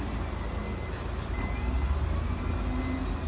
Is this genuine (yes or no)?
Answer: yes